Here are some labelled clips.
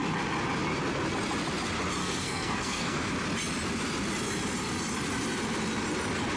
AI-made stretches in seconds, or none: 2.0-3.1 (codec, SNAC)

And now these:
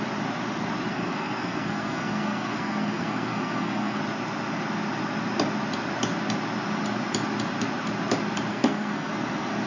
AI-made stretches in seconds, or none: 0.9-4.0 (codec, SNAC); 8.5-9.1

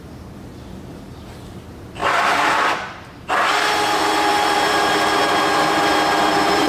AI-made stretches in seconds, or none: none

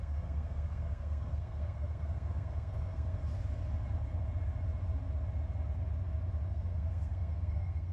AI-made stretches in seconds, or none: 0.0-3.2 (codec, SNAC); 6.5-7.9

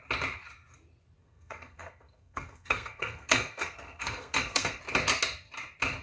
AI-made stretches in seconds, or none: 1.2-4.8 (codec, SNAC)

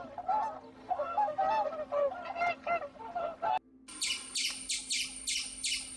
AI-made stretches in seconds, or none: 0.8-1.4 (codec, SNAC)

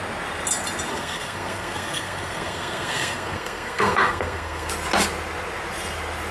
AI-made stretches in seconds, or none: 0.9-4.7 (codec, SNAC)